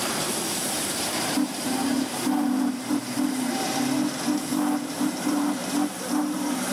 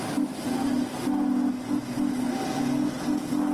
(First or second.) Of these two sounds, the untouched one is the second